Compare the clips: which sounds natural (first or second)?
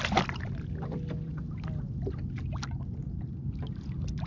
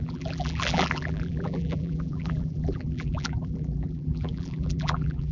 first